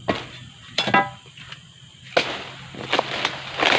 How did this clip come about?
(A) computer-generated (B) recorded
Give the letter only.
B